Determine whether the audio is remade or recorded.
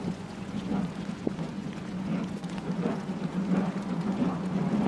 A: remade